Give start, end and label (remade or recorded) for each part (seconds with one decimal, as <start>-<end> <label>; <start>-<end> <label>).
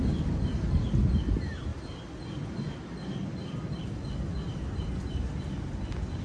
0.0-6.2 recorded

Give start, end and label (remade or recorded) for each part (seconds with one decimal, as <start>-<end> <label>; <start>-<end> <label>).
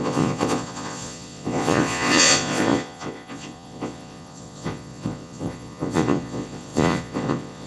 0.0-7.7 remade